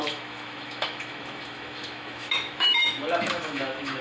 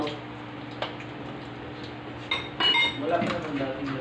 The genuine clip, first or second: second